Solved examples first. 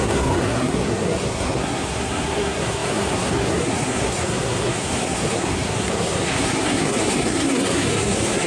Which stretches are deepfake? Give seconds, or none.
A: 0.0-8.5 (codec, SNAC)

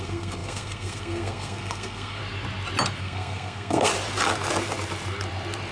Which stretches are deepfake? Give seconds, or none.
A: 0.0-2.2 (codec, SNAC); 3.0-3.9

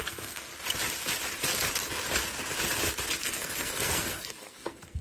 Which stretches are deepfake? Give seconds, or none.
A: 0.0-0.5 (codec, SNAC); 3.2-5.0

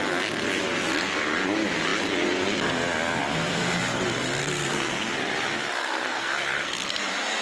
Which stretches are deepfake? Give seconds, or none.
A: 4.4-5.1 (codec, SNAC); 5.8-6.8